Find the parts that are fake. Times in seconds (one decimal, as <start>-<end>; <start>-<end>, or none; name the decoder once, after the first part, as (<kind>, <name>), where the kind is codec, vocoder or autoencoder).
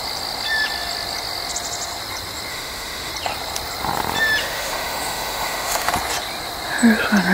2.5-3.1 (autoencoder, DAC-VAE); 4.4-5.9